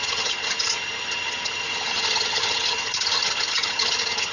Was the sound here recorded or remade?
remade